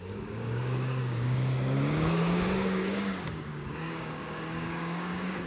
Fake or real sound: fake